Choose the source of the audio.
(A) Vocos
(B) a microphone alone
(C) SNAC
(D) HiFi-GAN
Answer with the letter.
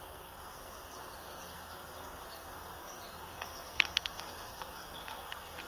C